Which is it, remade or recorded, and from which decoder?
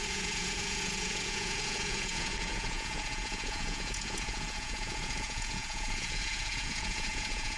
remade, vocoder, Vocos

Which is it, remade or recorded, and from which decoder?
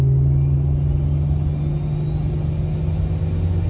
recorded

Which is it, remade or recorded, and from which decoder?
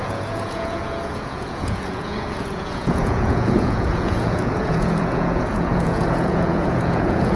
remade, vocoder, Vocos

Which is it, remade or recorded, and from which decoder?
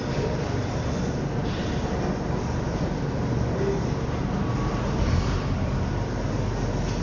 recorded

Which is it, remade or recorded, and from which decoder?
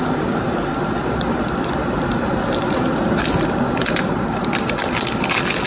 recorded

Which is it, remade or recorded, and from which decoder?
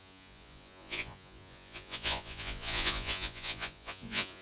remade, vocoder, Vocos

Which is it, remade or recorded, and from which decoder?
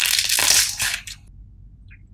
recorded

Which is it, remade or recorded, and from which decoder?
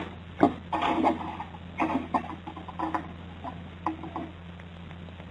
recorded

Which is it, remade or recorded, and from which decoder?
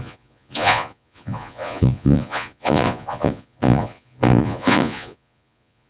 remade, vocoder, Vocos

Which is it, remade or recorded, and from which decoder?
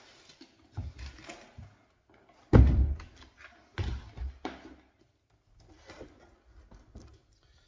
recorded